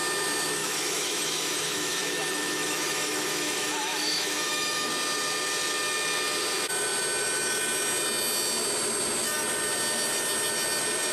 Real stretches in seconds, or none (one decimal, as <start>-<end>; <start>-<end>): 0.0-0.6; 4.9-11.1